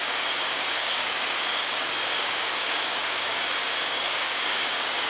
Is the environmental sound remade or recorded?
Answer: remade